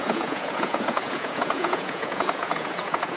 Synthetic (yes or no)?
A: yes